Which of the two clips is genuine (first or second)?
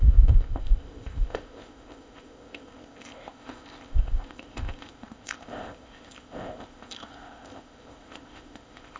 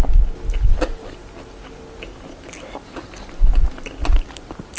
second